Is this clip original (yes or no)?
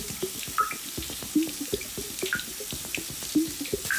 yes